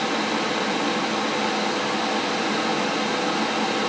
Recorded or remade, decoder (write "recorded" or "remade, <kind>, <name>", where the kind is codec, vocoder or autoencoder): recorded